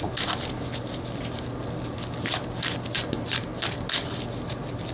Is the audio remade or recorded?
recorded